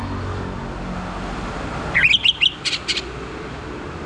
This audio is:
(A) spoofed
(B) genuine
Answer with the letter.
B